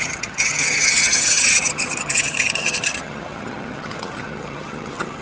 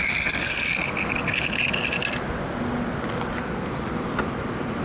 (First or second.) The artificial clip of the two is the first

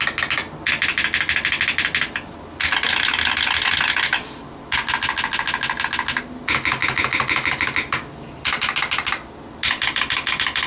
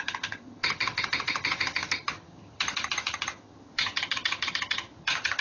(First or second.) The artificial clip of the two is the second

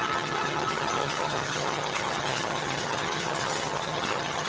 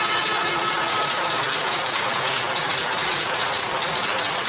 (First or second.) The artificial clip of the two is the first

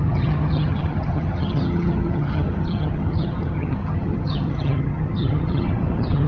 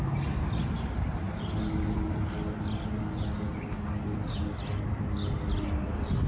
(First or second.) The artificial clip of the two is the first